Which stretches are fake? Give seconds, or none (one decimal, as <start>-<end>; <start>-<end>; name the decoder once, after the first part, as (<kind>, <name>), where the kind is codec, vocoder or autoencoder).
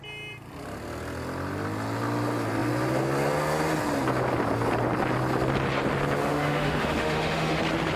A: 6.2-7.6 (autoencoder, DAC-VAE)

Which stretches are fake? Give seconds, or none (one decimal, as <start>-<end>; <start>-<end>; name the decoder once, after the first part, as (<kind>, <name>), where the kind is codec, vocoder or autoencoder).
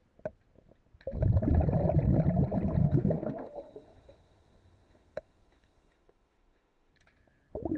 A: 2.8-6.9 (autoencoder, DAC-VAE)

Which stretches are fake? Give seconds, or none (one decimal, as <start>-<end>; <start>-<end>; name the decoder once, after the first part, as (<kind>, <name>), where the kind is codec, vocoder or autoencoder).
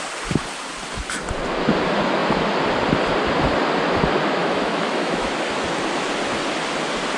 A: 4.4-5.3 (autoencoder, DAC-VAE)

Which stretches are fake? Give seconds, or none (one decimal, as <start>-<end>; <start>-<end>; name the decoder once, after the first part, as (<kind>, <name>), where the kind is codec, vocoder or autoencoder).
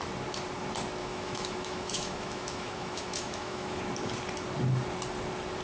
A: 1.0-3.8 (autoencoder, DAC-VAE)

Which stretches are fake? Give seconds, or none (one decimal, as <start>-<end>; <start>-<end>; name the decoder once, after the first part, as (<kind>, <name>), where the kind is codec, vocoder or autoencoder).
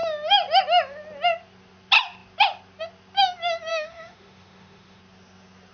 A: 3.7-5.0 (autoencoder, DAC-VAE)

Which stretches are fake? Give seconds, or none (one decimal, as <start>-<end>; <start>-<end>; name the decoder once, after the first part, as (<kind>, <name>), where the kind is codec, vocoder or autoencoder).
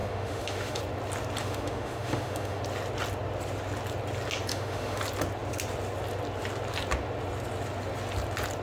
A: 0.0-0.8 (autoencoder, DAC-VAE); 1.4-2.6; 4.5-5.0